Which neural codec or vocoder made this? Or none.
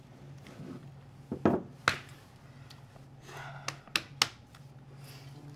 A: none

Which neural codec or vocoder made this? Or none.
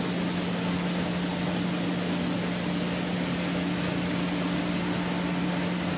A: none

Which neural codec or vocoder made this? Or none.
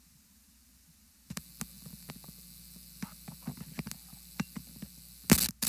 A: none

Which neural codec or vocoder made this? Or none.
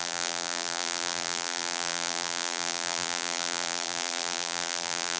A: vocoder, BigVGAN v2